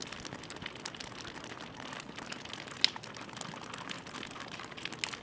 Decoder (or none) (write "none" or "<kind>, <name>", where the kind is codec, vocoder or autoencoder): none